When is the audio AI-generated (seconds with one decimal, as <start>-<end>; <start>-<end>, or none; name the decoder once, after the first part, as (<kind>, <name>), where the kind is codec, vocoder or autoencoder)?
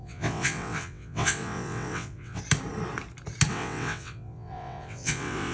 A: 0.0-2.4 (vocoder, WaveNeXt); 3.5-5.5